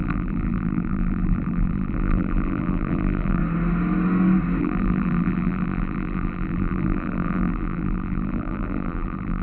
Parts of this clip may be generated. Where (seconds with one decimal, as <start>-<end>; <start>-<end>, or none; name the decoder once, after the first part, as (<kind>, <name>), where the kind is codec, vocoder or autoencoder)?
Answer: 0.0-3.4 (vocoder, BigVGAN v2); 4.6-9.4